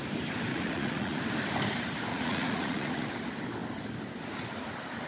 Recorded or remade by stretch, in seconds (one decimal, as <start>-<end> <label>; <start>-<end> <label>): 0.0-0.5 recorded; 0.5-1.2 remade; 1.2-2.1 recorded; 2.1-3.1 remade; 3.1-5.1 recorded